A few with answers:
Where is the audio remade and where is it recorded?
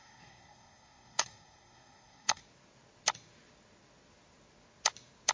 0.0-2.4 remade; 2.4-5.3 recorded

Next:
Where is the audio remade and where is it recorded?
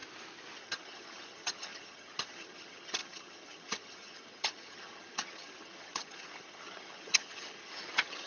0.0-0.6 recorded; 0.6-8.3 remade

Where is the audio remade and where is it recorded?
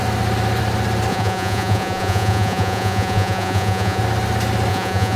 0.0-1.1 recorded; 1.1-4.0 remade; 4.0-4.7 recorded; 4.7-5.2 remade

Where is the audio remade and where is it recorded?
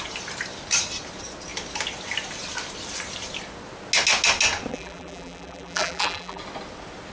0.0-4.7 recorded; 4.7-6.4 remade; 6.4-7.1 recorded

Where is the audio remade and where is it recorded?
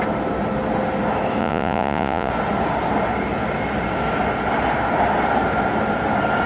0.0-1.4 recorded; 1.4-2.3 remade; 2.3-6.5 recorded